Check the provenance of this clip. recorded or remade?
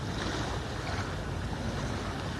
recorded